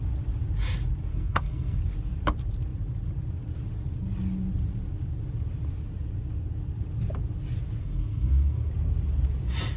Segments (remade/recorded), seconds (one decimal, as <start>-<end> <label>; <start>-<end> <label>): 0.0-1.1 recorded; 1.1-1.8 remade; 1.8-7.8 recorded; 7.8-8.7 remade; 8.7-9.8 recorded